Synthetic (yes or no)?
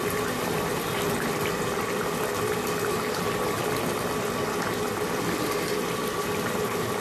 no